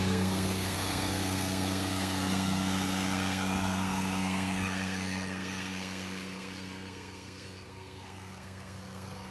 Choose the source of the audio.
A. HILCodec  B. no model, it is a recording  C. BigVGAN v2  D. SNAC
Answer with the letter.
D